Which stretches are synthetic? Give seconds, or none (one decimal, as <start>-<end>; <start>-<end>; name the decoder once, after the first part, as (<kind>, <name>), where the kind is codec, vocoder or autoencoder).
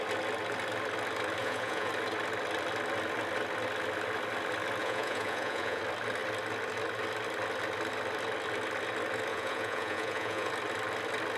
1.4-1.9 (vocoder, Vocos); 4.8-5.8; 9.3-10.5